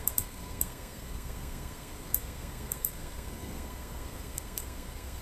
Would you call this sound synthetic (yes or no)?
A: yes